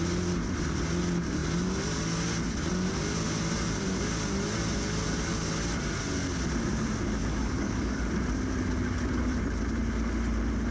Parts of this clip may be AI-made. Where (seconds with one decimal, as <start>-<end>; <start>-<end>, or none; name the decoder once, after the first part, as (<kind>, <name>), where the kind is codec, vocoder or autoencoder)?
7.2-8.1 (codec, DAC)